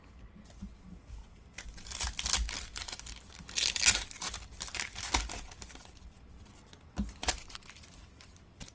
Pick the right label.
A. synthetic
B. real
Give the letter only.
B